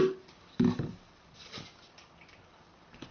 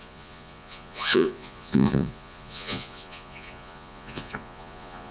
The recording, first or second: first